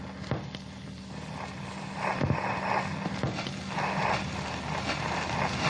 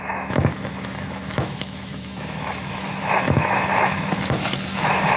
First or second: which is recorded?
first